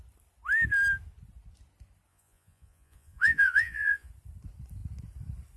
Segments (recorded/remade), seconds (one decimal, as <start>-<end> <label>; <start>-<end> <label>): 0.0-2.1 recorded; 2.1-4.1 remade; 4.1-5.6 recorded